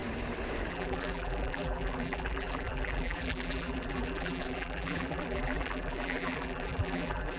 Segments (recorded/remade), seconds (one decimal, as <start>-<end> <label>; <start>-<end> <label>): 0.0-0.7 recorded; 0.7-7.4 remade